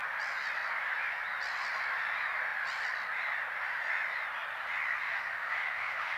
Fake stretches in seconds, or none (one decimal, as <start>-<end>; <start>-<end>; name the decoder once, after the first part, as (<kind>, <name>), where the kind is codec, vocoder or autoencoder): 5.0-6.2 (autoencoder, DAC-VAE)